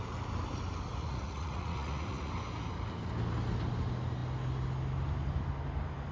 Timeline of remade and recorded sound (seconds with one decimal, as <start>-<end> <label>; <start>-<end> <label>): 0.0-1.0 recorded; 1.0-2.3 remade; 2.3-6.1 recorded